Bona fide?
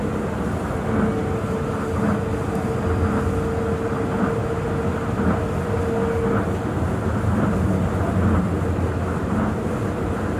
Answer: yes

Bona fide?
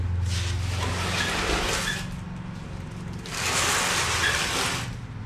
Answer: yes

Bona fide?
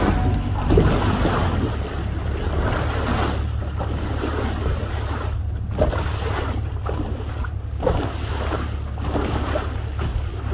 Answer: yes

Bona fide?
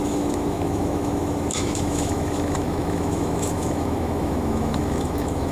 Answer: no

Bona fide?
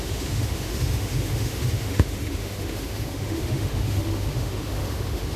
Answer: no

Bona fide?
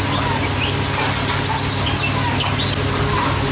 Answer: yes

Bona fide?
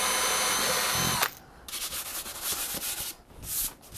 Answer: yes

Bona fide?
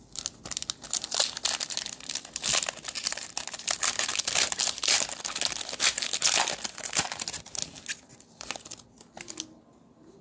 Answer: yes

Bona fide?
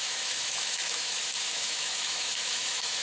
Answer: no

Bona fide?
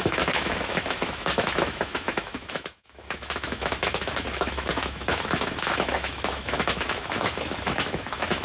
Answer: no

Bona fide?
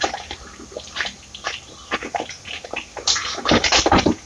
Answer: yes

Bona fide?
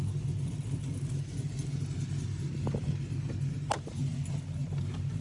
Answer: yes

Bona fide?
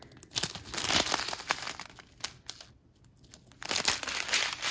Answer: yes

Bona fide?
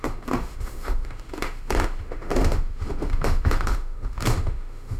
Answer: no